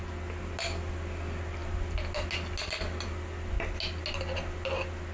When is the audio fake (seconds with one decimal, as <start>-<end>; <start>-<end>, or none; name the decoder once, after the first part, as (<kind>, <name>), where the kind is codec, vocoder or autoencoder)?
none